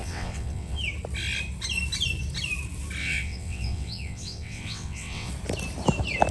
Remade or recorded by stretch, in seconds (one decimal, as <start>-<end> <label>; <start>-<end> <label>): 0.0-0.8 remade; 0.8-3.0 recorded; 3.0-5.3 remade; 5.3-6.3 recorded